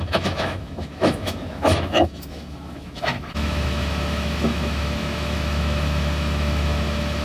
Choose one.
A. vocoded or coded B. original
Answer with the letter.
A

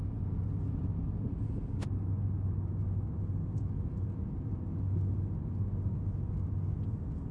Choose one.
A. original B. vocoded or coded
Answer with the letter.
A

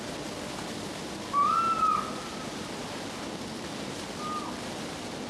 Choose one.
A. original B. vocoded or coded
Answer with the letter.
A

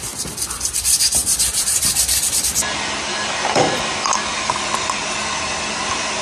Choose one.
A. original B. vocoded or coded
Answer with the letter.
B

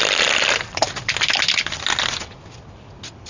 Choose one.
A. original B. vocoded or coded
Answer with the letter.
A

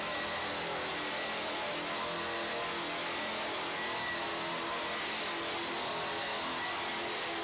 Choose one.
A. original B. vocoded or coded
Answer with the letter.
A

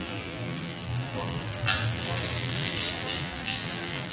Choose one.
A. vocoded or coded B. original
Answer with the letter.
A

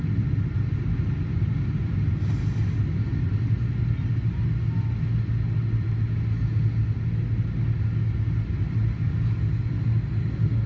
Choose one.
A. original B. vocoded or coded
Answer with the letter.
A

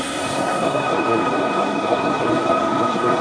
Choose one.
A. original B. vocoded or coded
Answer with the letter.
B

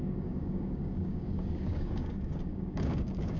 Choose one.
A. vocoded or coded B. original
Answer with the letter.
A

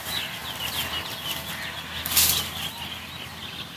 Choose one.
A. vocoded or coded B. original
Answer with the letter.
B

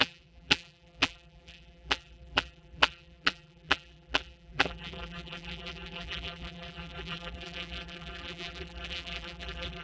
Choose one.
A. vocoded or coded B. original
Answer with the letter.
A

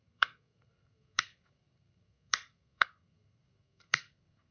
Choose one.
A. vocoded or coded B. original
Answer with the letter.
A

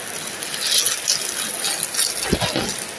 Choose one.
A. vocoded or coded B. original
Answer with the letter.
B